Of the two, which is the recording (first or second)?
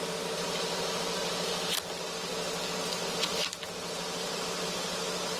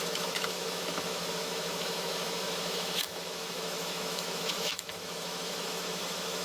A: first